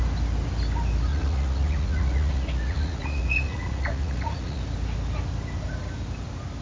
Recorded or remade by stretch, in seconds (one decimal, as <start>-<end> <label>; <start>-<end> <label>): 0.0-1.1 recorded; 1.1-4.6 remade; 4.6-6.6 recorded